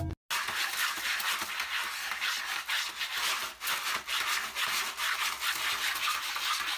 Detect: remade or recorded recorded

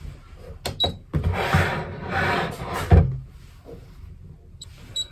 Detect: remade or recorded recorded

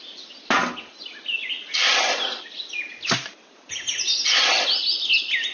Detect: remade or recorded recorded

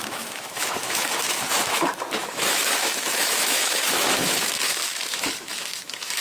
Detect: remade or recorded remade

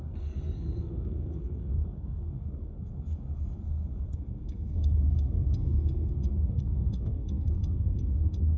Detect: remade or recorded remade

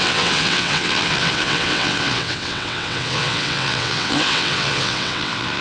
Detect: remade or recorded remade